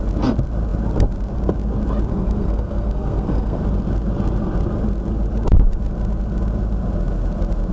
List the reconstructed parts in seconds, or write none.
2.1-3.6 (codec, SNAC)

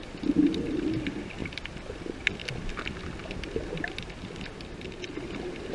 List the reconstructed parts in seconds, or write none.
none

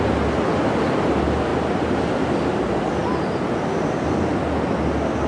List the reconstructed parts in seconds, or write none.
none

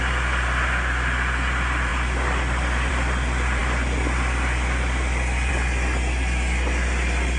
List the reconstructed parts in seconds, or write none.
none

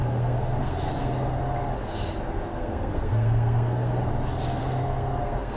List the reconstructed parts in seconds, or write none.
0.0-1.4 (codec, SNAC); 2.5-4.1; 4.6-5.6

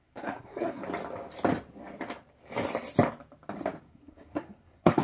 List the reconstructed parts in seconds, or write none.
0.0-0.8 (codec, SNAC); 3.8-5.0

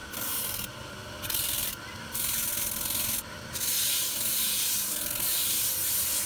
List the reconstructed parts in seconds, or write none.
none